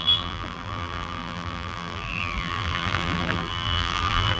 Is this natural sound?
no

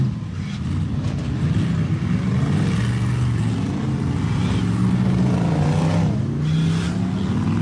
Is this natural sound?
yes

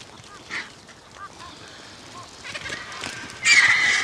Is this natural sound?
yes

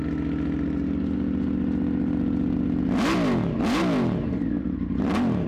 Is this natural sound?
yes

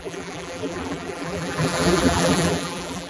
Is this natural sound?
no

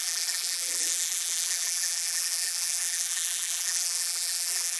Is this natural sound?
no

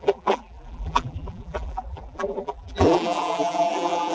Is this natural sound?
no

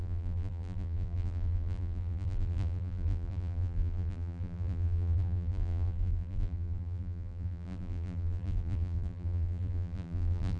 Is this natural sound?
no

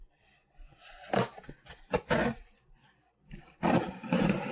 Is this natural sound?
yes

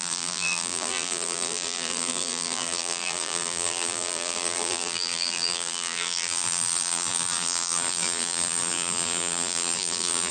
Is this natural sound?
no